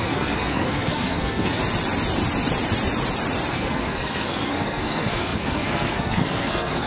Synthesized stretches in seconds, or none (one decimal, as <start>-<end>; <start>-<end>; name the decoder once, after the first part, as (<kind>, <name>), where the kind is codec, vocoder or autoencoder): 0.0-1.6 (codec, SNAC); 3.5-6.9